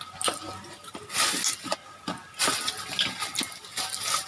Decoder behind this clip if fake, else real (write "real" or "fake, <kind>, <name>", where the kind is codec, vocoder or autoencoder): real